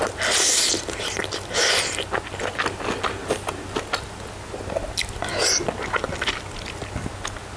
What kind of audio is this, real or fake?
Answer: real